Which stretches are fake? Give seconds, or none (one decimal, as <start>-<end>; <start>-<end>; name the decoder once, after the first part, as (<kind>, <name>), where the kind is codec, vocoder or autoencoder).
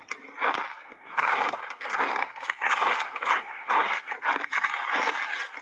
0.7-4.1 (codec, SNAC)